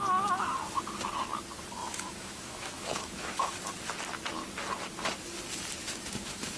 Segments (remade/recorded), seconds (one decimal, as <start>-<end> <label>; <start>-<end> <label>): 0.0-1.8 recorded; 1.8-3.5 remade; 3.5-5.8 recorded; 5.8-6.6 remade